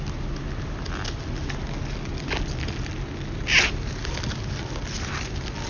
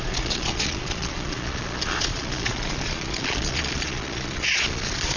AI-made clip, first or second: second